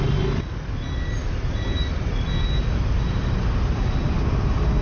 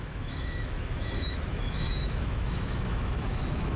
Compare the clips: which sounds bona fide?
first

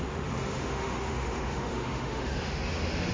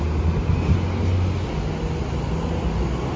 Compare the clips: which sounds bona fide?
second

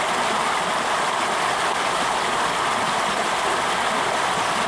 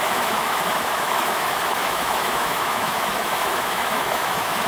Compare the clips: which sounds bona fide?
first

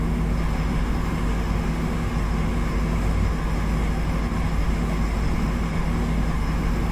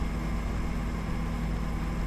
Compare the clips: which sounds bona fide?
second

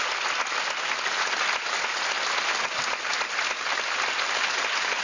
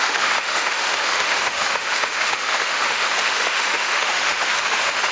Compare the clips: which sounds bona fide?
first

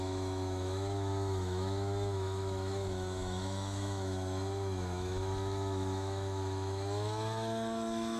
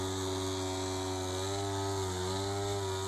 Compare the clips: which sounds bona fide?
second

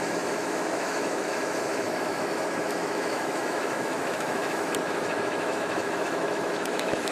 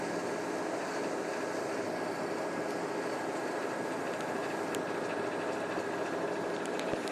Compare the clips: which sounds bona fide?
second